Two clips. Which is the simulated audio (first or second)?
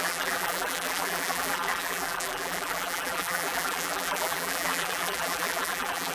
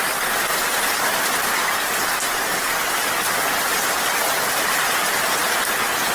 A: first